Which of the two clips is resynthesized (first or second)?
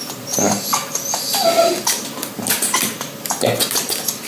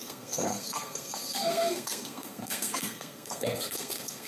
second